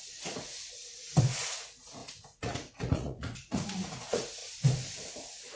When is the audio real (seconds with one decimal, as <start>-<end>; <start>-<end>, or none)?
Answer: 4.4-5.6